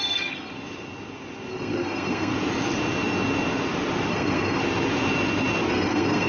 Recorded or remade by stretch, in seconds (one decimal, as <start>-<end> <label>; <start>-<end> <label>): 0.0-0.5 remade; 0.5-1.5 recorded; 1.5-2.3 remade; 2.3-4.1 recorded; 4.1-4.6 remade; 4.6-5.7 recorded; 5.7-6.3 remade

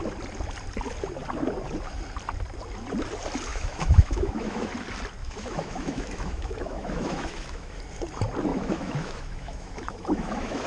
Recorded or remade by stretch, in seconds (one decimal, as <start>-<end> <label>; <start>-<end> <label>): 0.0-3.5 recorded; 3.5-4.7 remade; 4.7-5.2 recorded; 5.2-7.8 remade; 7.8-8.5 recorded; 8.5-10.7 remade

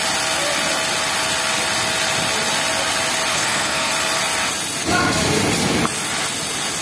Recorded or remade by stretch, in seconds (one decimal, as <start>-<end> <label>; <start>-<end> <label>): 0.0-3.3 recorded; 3.3-3.9 remade; 3.9-6.8 recorded